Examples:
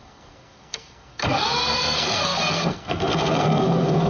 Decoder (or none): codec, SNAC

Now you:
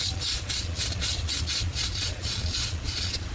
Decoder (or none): vocoder, Vocos